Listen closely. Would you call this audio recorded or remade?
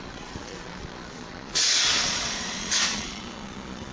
remade